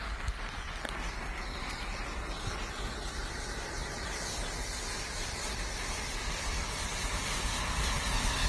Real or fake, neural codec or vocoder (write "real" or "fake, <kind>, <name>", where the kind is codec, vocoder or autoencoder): fake, vocoder, BigVGAN v2